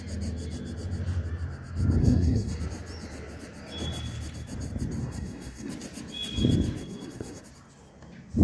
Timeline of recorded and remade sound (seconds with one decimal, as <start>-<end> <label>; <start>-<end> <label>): 0.0-2.0 recorded; 2.0-2.6 remade; 2.6-5.0 recorded; 5.0-5.7 remade; 5.7-6.8 recorded; 6.8-7.4 remade; 7.4-8.4 recorded